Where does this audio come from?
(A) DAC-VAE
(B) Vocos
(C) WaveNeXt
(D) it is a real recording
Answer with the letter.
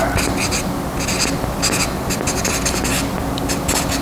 D